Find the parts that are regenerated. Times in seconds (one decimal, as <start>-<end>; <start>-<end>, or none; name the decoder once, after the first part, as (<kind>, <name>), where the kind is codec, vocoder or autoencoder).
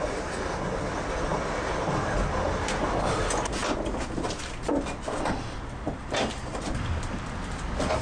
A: none